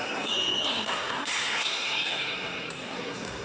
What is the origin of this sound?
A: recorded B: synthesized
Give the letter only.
B